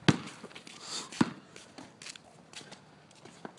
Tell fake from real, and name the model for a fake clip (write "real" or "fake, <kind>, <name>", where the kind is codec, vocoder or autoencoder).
real